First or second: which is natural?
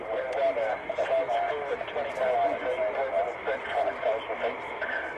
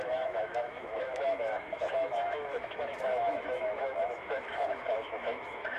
first